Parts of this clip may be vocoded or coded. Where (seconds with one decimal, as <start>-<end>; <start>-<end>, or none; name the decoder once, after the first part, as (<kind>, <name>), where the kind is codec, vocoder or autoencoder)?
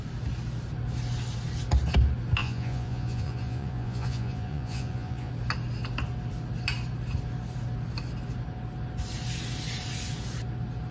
2.4-5.3 (vocoder, Vocos)